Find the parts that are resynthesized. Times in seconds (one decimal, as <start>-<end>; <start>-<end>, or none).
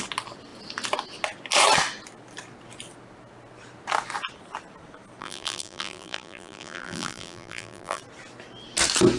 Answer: 5.2-8.0